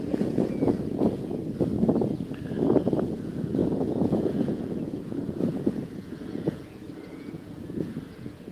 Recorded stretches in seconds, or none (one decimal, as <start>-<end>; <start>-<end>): 1.4-2.8

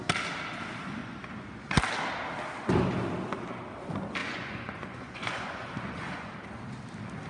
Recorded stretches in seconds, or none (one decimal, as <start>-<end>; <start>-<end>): 0.0-1.0; 1.6-4.2; 6.3-7.3